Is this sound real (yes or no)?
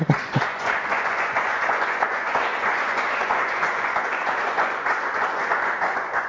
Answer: no